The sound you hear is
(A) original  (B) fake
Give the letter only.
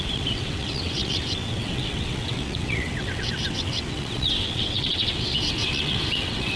B